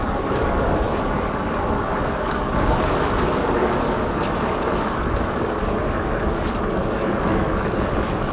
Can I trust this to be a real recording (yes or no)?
no